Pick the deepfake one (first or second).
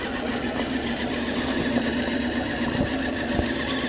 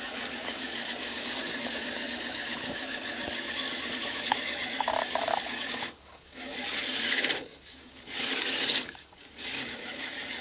second